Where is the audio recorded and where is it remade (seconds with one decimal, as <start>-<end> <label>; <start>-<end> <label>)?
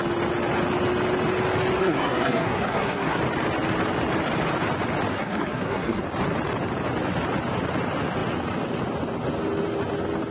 0.0-1.8 recorded; 1.8-3.2 remade; 3.2-5.1 recorded; 5.1-6.0 remade; 6.0-10.3 recorded